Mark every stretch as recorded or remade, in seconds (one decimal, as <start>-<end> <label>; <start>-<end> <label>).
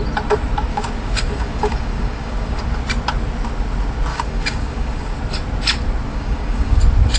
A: 0.0-0.7 recorded; 0.7-2.6 remade; 2.6-4.1 recorded; 4.1-5.2 remade; 5.2-6.1 recorded; 6.1-6.8 remade; 6.8-7.2 recorded